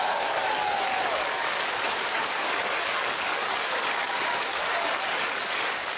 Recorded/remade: remade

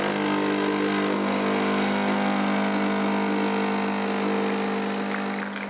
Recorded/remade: recorded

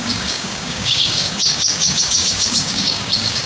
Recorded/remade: remade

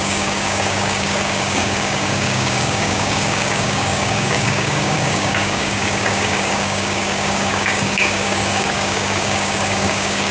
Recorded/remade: remade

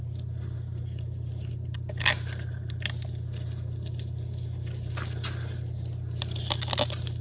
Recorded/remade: recorded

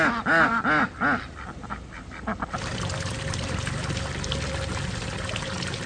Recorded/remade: recorded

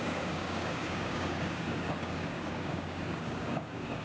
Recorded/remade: remade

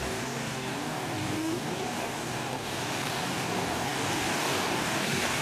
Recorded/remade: remade